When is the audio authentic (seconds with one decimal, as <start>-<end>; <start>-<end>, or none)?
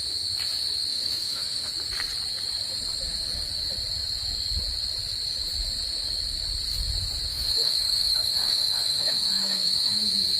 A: 0.0-0.9; 1.7-7.3; 10.0-10.4